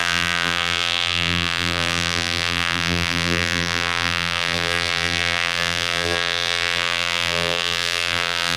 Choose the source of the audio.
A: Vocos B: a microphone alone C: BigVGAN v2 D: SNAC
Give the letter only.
C